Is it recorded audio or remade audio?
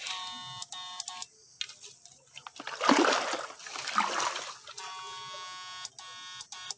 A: recorded